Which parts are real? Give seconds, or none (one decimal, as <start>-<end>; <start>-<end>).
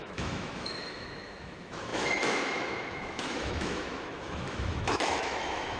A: none